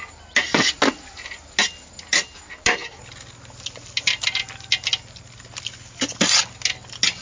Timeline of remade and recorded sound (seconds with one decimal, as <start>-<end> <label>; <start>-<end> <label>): 0.0-7.2 recorded